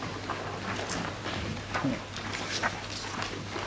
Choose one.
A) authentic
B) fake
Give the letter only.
A